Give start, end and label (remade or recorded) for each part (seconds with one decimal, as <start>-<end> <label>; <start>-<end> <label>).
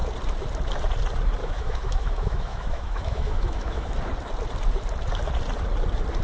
0.0-1.4 recorded; 1.4-4.0 remade; 4.0-6.2 recorded